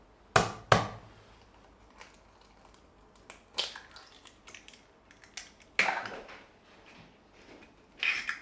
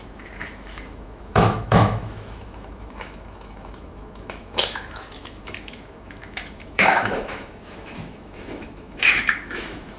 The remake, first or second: second